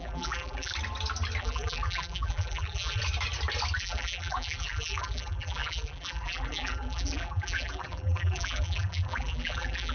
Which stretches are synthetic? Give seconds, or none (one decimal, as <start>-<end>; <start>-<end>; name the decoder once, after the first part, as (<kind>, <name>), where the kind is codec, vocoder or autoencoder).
0.0-0.7 (vocoder, BigVGAN v2); 1.4-3.0; 3.8-9.9